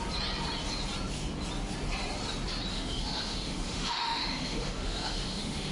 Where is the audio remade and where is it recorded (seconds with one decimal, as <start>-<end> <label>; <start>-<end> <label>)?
0.0-2.7 recorded; 2.7-5.7 remade